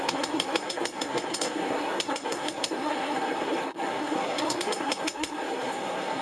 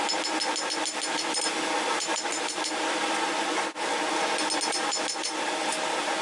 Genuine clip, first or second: second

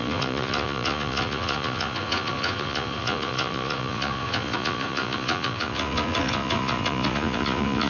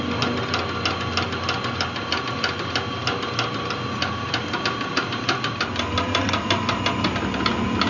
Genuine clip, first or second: second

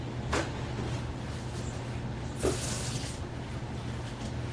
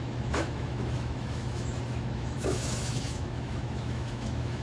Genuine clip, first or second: first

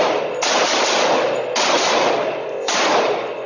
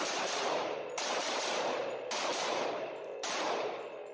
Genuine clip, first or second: first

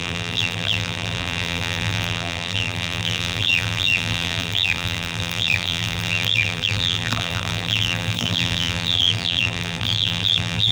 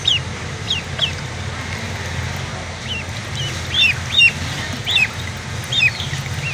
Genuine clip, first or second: second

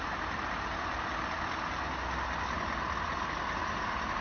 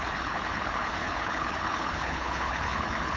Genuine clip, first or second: first